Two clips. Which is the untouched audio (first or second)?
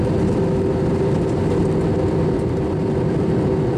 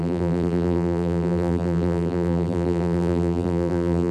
first